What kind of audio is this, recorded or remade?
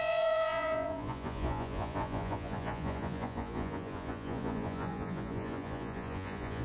remade